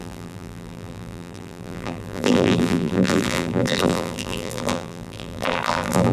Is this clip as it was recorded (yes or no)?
no